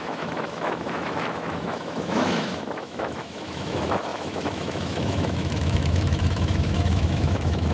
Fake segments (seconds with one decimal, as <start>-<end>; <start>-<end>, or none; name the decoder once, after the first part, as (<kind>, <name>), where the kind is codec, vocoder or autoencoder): 0.0-7.7 (autoencoder, DAC-VAE)